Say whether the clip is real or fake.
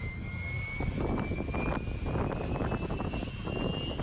real